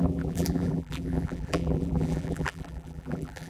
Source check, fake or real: fake